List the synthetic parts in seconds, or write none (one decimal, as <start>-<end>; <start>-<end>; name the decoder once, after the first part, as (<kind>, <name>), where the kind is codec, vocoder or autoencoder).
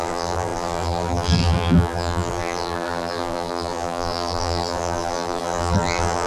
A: 0.0-6.3 (vocoder, BigVGAN v2)